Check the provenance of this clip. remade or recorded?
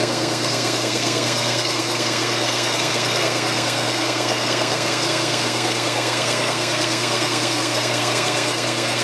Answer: remade